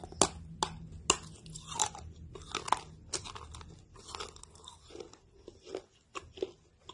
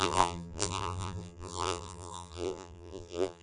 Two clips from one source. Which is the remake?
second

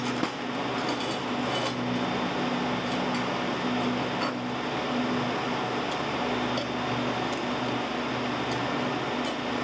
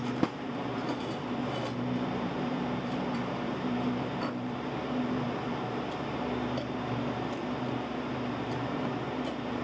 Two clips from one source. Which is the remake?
second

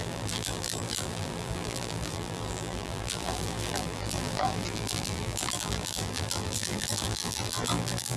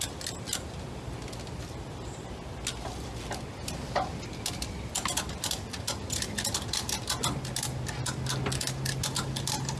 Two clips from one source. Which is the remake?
first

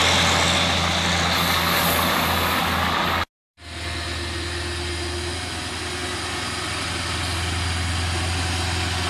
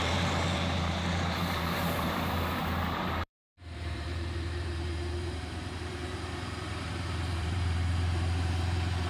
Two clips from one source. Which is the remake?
second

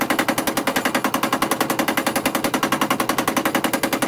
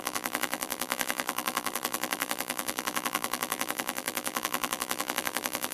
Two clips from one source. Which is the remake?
second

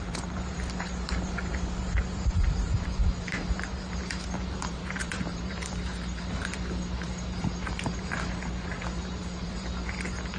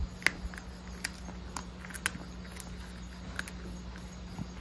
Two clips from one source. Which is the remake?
first